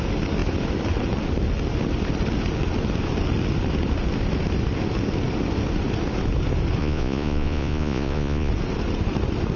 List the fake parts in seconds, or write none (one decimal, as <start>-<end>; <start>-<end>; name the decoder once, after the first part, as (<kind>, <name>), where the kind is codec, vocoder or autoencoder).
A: 6.8-8.5 (vocoder, Vocos)